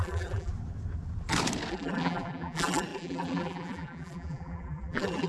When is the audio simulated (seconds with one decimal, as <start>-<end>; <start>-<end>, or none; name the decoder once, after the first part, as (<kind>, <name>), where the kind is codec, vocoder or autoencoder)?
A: 0.0-0.5 (vocoder, BigVGAN v2); 1.7-5.3